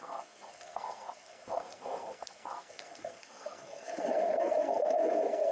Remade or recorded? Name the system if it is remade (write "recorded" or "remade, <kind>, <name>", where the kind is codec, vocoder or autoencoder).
remade, codec, SNAC